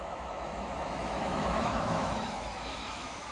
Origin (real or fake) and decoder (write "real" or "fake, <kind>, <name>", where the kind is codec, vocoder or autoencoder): fake, autoencoder, DAC-VAE